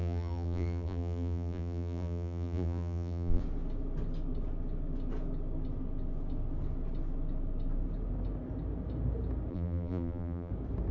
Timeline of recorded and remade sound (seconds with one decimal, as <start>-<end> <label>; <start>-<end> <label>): 0.0-3.4 remade; 3.4-9.5 recorded; 9.5-10.5 remade; 10.5-10.9 recorded